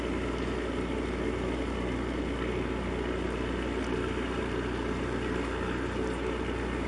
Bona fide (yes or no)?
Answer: yes